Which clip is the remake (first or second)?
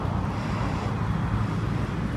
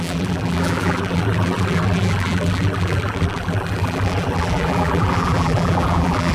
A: second